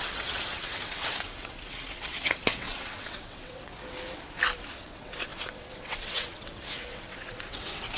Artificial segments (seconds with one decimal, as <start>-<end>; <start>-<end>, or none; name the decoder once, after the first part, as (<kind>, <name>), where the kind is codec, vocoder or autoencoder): 0.0-3.7 (vocoder, WaveNeXt); 4.8-8.0